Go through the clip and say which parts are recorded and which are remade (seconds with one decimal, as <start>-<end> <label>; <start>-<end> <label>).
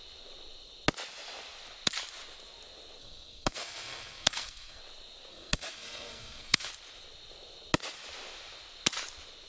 0.0-3.0 recorded; 3.0-4.8 remade; 4.8-5.3 recorded; 5.3-6.7 remade; 6.7-9.5 recorded